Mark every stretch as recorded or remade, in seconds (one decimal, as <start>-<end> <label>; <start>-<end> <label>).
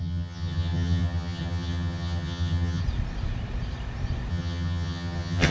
0.0-2.8 remade; 2.8-4.3 recorded; 4.3-5.5 remade